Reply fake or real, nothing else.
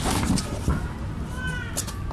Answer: real